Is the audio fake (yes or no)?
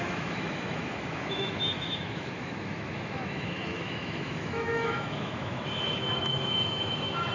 yes